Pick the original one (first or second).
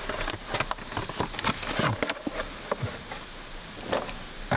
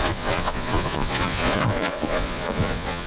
first